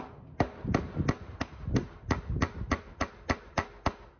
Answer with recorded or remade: recorded